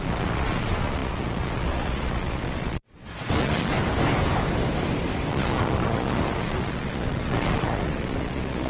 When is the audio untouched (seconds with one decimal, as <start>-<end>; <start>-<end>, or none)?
3.7-5.3